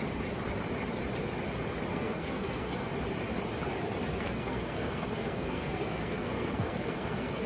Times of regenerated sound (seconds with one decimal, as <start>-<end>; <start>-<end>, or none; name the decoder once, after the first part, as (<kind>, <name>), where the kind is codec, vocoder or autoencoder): 1.9-2.8 (codec, SNAC); 4.1-7.5